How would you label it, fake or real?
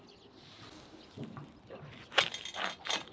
real